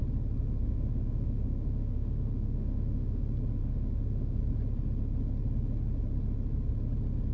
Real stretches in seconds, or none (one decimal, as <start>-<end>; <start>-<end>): 0.0-0.6; 3.2-3.6; 4.4-7.3